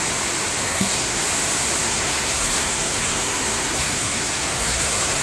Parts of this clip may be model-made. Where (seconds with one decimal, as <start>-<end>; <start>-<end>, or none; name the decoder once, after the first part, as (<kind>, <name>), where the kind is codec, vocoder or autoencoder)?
0.6-1.2 (codec, SNAC); 1.8-5.2